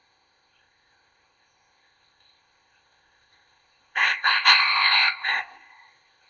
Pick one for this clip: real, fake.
fake